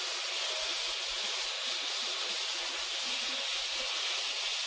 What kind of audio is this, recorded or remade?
recorded